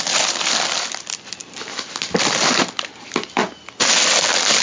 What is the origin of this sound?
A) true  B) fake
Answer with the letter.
A